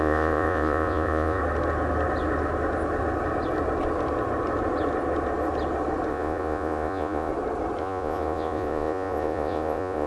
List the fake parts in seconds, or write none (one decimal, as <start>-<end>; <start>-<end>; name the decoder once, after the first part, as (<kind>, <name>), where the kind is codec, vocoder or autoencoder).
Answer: 0.0-1.4 (vocoder, Vocos); 6.1-7.3; 7.8-10.1